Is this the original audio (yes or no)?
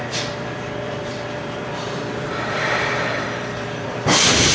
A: no